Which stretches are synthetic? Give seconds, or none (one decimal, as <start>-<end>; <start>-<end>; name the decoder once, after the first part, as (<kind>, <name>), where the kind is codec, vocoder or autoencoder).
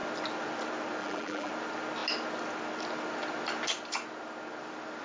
1.0-1.5 (vocoder, BigVGAN v2)